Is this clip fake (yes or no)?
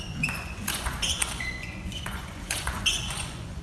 yes